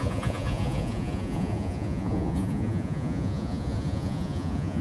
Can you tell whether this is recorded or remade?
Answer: remade